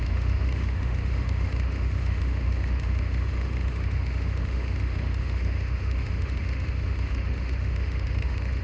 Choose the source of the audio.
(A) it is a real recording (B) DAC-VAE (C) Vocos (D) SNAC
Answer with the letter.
B